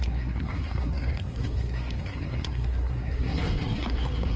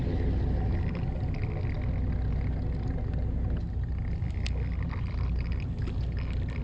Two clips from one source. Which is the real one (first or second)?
second